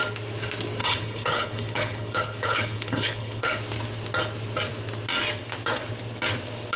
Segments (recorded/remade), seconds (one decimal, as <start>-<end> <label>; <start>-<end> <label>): 0.0-0.8 recorded; 0.8-3.6 remade; 3.6-6.8 recorded